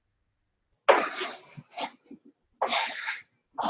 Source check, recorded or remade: recorded